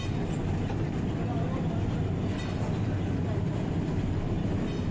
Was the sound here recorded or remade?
recorded